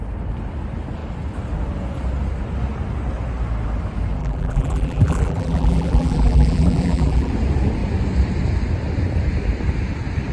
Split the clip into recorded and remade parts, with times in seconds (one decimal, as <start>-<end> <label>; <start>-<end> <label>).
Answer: 0.0-4.2 recorded; 4.2-7.3 remade; 7.3-10.3 recorded